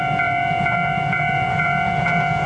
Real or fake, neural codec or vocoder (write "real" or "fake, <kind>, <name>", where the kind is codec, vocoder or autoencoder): fake, vocoder, Vocos